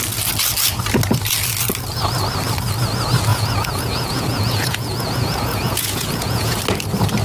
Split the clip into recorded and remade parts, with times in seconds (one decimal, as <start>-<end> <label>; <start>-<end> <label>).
0.0-3.3 recorded; 3.3-6.6 remade; 6.6-7.2 recorded